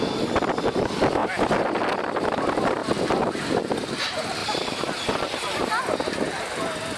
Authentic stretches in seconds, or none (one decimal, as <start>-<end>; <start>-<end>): 0.0-1.2; 1.8-2.8; 3.6-4.4; 5.7-7.0